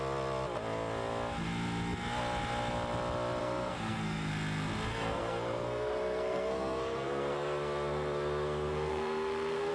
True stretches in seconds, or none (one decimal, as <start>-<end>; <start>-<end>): 0.0-3.4; 4.3-4.9